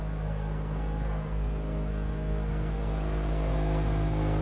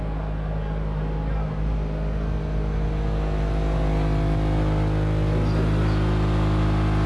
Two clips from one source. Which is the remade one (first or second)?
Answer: first